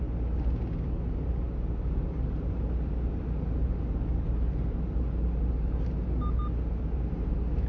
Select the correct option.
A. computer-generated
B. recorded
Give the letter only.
B